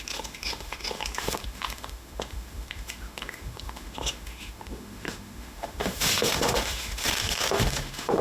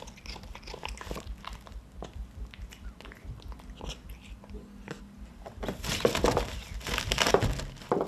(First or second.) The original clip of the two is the second